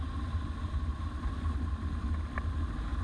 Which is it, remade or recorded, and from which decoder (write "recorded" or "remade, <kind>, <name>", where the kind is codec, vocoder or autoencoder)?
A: remade, vocoder, BigVGAN v2